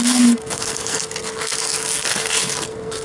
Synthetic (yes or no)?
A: yes